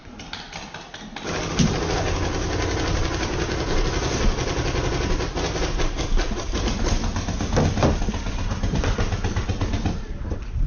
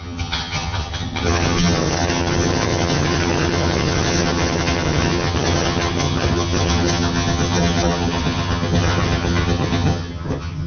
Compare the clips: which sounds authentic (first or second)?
first